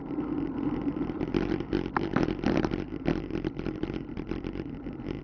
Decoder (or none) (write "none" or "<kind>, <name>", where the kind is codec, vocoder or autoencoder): vocoder, BigVGAN v2